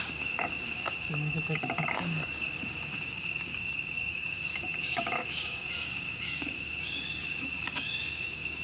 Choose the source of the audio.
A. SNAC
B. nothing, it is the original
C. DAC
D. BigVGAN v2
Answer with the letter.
C